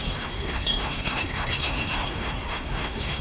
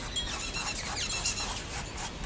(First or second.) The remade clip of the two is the first